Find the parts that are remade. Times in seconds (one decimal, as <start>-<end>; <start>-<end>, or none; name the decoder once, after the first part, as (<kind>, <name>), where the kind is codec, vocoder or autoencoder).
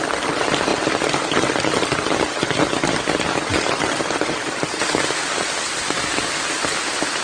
none